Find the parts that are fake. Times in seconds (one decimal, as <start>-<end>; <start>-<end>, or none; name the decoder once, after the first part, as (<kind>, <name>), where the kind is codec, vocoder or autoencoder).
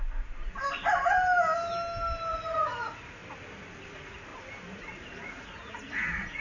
0.0-0.6 (vocoder, Vocos); 2.3-3.2; 3.9-4.3; 4.8-6.4